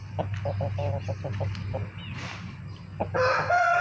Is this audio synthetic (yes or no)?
no